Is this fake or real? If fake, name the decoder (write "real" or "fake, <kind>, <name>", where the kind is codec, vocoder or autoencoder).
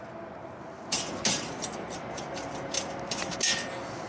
real